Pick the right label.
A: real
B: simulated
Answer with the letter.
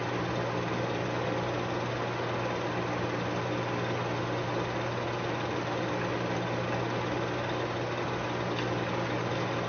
A